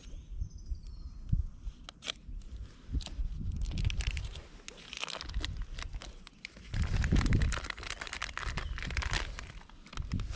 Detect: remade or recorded recorded